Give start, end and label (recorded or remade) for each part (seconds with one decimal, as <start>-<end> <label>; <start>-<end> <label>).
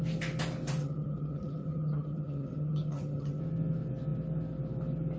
0.0-0.8 recorded; 0.8-3.4 remade; 3.4-5.2 recorded